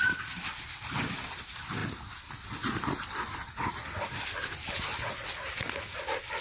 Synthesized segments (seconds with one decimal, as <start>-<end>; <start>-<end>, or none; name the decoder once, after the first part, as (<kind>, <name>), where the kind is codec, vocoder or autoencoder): none